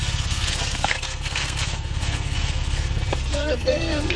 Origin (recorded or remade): remade